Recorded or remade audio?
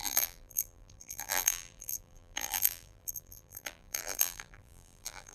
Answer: remade